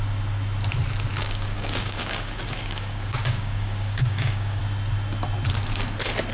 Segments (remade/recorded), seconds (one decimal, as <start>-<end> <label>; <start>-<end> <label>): 0.0-1.1 recorded; 1.1-4.6 remade; 4.6-6.3 recorded

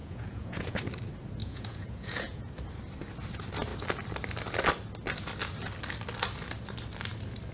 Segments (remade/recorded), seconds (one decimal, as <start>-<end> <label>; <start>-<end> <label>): 0.0-0.8 remade; 0.8-1.4 recorded; 1.4-2.5 remade; 2.5-7.5 recorded

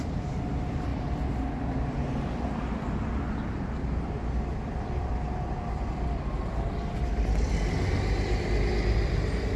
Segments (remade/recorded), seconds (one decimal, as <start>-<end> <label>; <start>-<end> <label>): 0.0-9.6 recorded

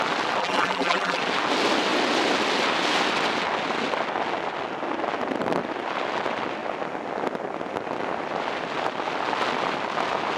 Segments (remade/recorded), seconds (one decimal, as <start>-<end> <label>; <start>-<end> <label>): 0.0-0.4 recorded; 0.4-1.2 remade; 1.2-10.4 recorded

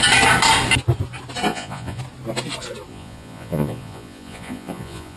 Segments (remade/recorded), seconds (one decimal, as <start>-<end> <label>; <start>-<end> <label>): 0.0-1.5 recorded; 1.5-2.0 remade; 2.0-2.9 recorded; 2.9-5.2 remade

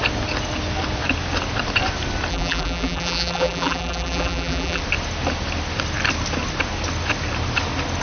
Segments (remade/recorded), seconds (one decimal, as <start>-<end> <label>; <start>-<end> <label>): 0.0-2.3 recorded; 2.3-4.8 remade; 4.8-8.0 recorded

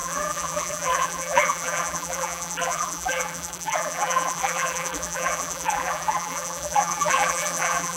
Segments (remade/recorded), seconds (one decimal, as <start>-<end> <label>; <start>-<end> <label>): 0.0-8.0 remade

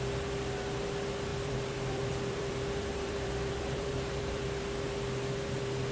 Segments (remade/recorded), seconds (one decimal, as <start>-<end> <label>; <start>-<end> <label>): 0.0-1.3 recorded; 1.3-4.6 remade; 4.6-5.9 recorded